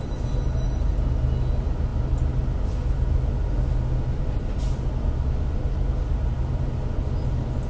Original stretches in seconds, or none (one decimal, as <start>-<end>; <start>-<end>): 0.0-7.7